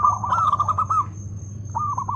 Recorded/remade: remade